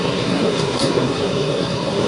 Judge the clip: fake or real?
fake